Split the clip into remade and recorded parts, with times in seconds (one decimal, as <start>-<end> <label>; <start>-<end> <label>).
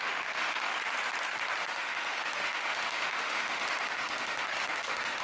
0.0-0.7 remade; 0.7-1.6 recorded; 1.6-5.2 remade